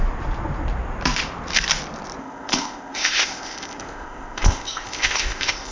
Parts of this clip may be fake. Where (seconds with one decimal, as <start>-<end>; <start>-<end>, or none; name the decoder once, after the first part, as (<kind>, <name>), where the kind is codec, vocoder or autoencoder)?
2.2-5.7 (codec, ZipCodec)